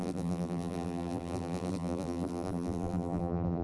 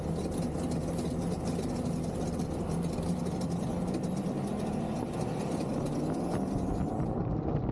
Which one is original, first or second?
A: second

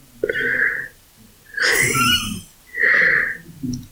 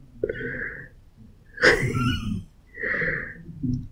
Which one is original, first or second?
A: first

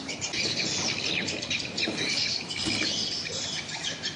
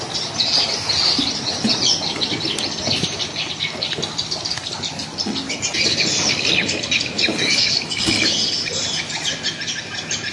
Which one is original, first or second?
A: second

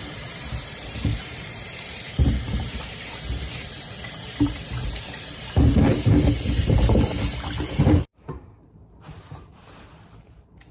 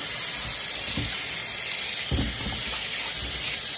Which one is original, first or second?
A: second